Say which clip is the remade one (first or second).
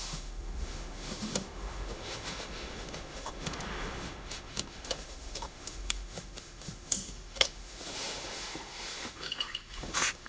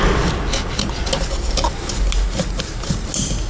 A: first